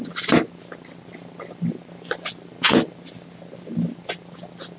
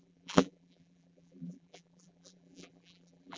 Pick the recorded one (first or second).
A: first